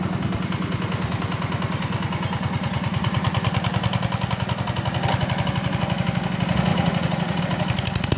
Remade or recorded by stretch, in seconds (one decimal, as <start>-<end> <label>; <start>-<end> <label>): 0.0-6.7 recorded; 6.7-7.4 remade; 7.4-8.2 recorded